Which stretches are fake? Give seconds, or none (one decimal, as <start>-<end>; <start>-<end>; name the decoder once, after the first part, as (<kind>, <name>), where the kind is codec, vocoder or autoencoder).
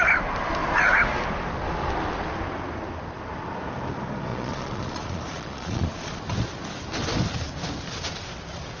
4.3-6.2 (vocoder, Vocos)